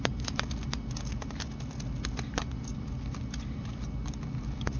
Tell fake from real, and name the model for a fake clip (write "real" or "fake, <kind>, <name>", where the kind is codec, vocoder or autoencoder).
real